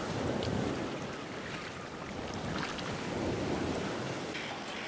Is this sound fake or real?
real